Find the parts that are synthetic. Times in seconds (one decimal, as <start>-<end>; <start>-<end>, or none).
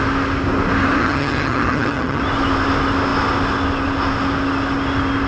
1.0-2.2